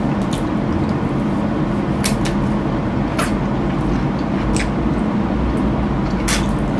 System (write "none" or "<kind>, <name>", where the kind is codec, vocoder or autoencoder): none